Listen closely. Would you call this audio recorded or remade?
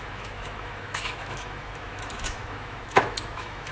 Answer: remade